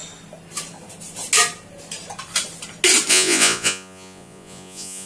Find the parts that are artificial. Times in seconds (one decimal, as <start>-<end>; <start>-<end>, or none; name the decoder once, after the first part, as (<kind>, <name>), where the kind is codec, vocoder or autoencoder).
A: 3.1-5.1 (vocoder, Vocos)